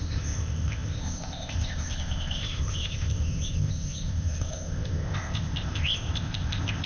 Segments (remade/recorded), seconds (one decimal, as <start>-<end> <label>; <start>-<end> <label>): 0.0-6.9 remade